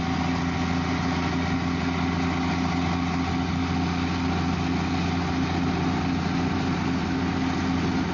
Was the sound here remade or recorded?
recorded